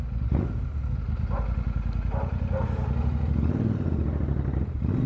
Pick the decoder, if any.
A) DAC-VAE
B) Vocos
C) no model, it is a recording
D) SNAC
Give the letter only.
C